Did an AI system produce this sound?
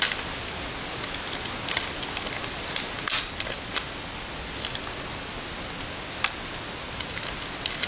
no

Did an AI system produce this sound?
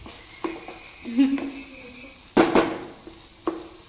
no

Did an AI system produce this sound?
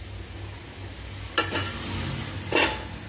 no